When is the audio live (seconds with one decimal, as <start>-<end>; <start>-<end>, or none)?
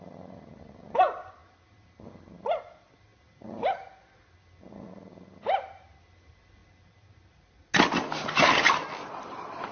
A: 1.4-2.6; 3.1-6.0; 6.6-9.2